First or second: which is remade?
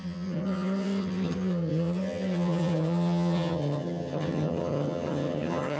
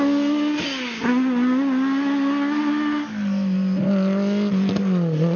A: first